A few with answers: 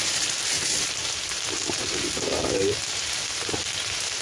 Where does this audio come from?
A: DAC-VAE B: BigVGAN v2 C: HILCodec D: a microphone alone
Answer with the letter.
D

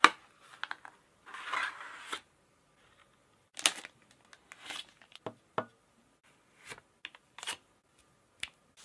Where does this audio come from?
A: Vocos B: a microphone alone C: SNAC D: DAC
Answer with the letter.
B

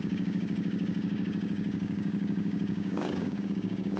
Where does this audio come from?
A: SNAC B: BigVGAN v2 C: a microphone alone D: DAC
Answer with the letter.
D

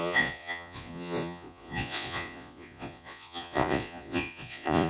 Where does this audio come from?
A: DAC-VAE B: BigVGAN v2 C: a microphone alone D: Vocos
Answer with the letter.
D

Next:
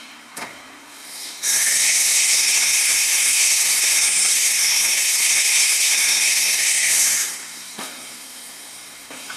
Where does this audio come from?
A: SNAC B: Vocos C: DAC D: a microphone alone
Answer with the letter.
A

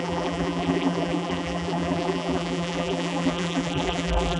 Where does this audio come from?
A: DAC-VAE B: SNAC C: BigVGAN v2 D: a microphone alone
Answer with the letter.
C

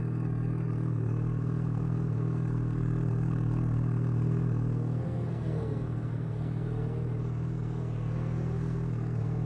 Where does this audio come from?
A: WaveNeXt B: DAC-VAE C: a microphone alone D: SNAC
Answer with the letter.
D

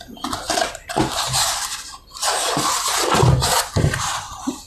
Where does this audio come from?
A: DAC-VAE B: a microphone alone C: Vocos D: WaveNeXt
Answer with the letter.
B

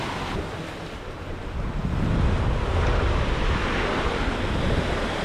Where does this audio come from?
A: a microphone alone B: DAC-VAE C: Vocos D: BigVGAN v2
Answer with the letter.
A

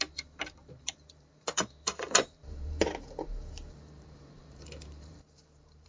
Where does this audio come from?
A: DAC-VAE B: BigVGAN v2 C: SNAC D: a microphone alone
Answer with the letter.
B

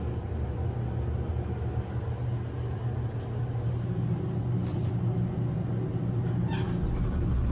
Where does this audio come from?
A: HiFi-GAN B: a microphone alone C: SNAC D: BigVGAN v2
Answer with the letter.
B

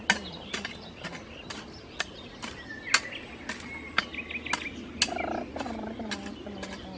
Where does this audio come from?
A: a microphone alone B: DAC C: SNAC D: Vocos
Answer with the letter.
A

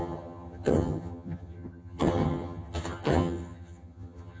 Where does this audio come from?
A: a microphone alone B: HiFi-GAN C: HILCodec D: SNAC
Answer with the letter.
B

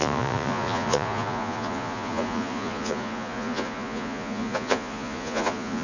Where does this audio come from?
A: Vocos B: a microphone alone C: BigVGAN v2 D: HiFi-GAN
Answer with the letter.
A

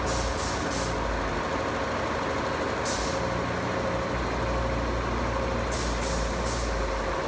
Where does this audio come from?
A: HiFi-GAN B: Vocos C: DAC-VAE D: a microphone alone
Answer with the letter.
D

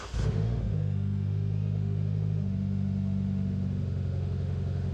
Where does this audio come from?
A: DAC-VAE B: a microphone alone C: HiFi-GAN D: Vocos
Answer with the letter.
A